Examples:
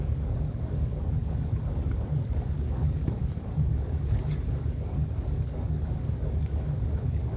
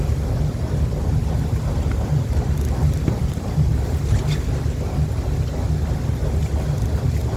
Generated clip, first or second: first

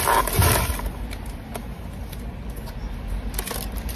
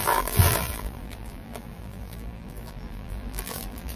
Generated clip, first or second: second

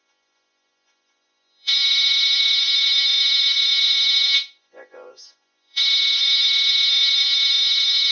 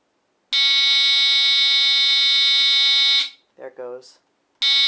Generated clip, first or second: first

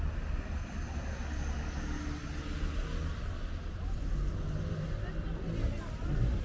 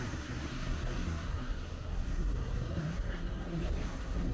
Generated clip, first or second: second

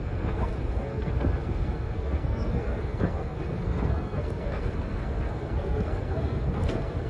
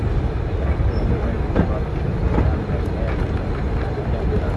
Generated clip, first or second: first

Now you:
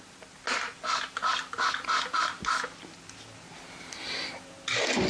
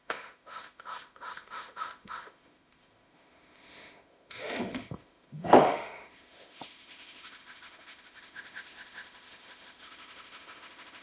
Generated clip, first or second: second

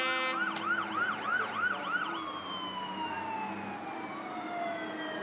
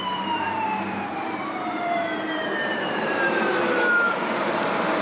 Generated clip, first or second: second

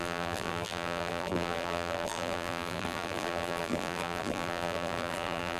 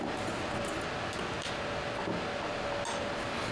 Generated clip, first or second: first